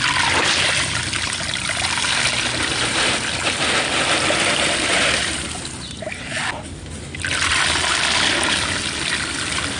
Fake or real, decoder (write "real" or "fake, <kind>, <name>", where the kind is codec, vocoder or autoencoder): real